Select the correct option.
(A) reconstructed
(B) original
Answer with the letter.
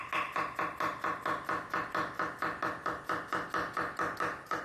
B